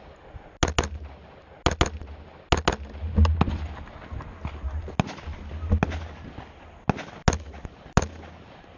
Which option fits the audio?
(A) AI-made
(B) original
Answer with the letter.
B